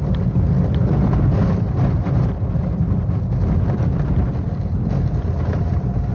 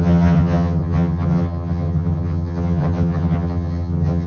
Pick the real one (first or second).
first